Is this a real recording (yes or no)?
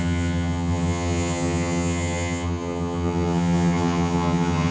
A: no